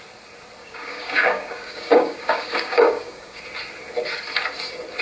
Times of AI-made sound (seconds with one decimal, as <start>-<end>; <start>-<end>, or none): 0.6-3.4